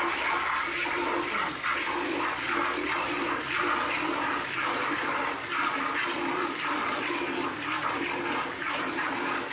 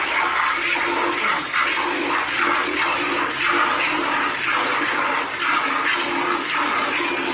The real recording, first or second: second